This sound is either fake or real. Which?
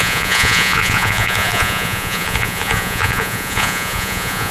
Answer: fake